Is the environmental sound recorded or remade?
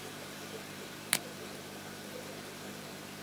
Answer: remade